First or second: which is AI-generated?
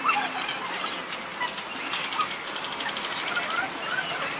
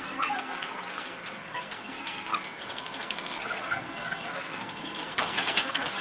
second